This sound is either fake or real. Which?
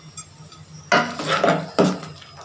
real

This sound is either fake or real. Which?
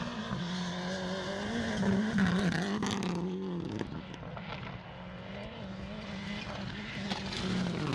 real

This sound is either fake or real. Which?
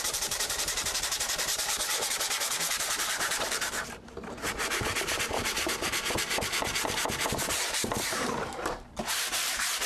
fake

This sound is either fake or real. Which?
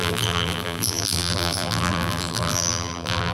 fake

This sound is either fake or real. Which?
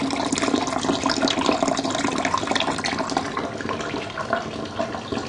real